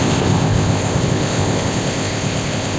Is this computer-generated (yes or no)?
yes